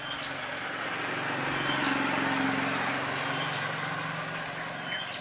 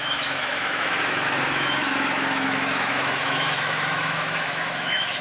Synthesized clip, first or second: second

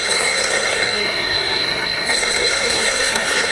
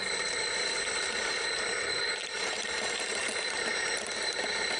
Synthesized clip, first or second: first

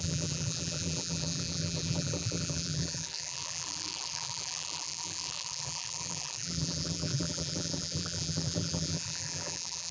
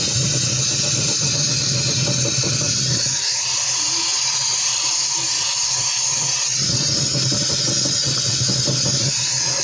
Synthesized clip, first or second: first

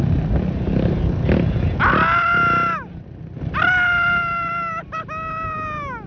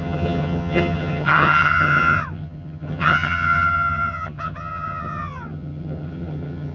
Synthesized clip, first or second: second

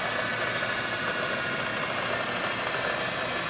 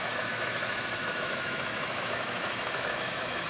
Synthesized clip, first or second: second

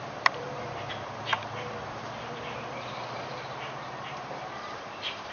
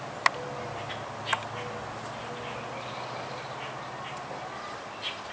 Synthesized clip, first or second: first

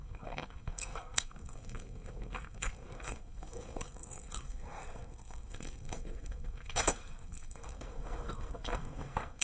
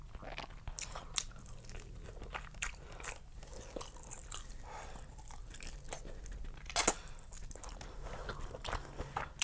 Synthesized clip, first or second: first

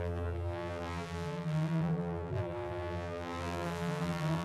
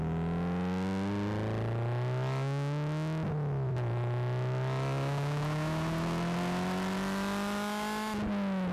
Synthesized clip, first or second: first